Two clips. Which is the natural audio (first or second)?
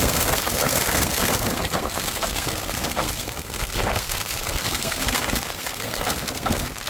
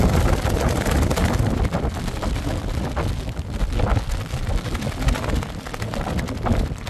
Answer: second